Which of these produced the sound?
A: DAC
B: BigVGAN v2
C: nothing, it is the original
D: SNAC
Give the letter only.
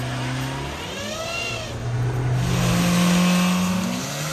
C